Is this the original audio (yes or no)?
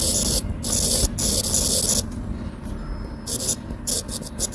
yes